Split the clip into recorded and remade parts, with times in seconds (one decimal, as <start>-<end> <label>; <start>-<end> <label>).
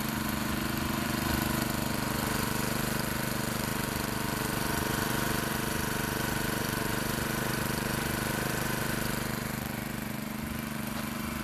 0.0-11.4 remade